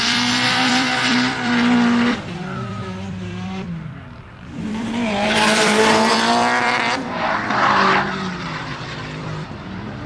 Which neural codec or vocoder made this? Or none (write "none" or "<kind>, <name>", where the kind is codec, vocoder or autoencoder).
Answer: vocoder, BigVGAN v2